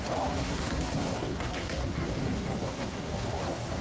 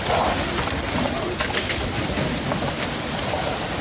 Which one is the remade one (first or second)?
first